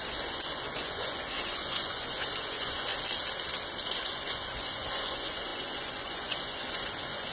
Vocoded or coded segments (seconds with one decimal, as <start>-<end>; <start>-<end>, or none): 0.0-2.9; 3.9-7.3